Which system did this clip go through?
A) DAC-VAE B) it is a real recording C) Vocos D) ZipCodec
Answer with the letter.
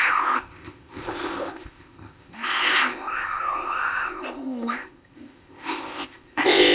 D